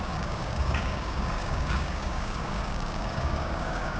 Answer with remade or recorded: remade